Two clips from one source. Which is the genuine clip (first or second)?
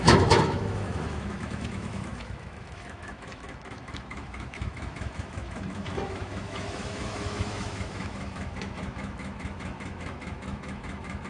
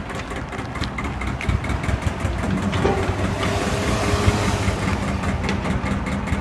second